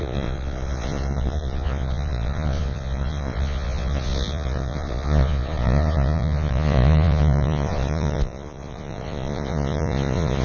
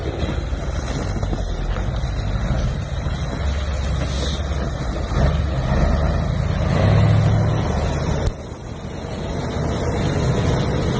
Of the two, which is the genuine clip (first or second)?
second